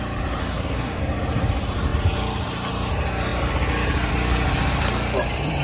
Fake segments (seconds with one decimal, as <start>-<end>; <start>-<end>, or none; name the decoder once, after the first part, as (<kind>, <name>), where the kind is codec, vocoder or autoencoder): 0.4-1.0 (codec, SNAC)